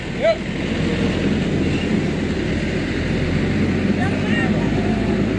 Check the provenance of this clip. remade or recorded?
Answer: recorded